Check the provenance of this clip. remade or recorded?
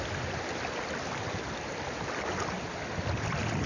recorded